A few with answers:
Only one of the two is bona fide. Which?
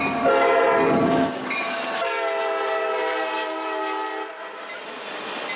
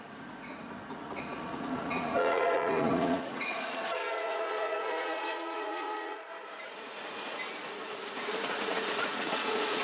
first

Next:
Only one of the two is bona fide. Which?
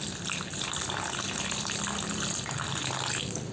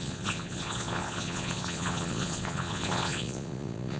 first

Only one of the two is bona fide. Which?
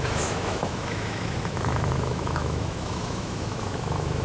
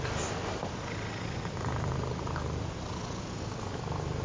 second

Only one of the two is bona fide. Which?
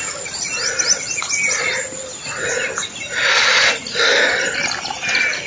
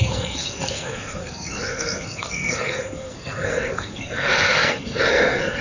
first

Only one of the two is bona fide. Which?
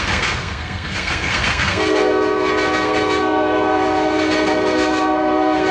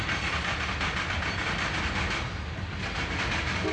second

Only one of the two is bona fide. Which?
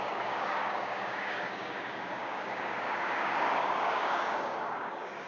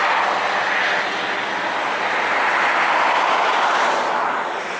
second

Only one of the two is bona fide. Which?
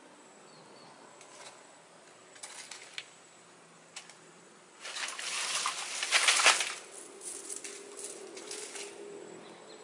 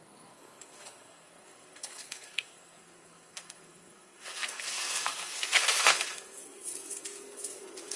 first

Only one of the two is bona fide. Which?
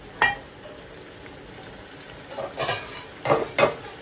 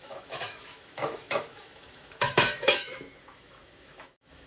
first